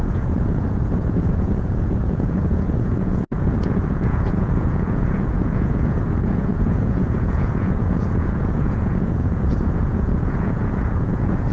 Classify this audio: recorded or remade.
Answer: remade